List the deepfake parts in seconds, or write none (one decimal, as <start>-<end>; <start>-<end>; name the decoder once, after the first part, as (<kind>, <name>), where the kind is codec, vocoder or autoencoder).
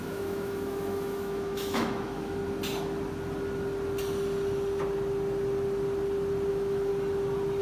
0.0-2.4 (autoencoder, DAC-VAE); 6.5-6.9